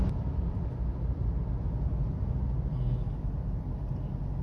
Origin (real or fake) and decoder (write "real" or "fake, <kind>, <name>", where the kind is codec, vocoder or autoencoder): real